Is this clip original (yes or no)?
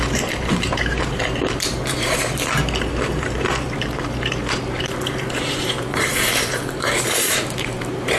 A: no